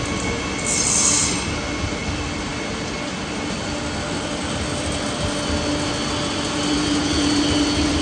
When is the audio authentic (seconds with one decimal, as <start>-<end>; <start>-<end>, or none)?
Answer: 0.0-8.0